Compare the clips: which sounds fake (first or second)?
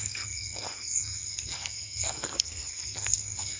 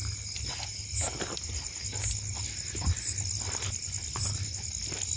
first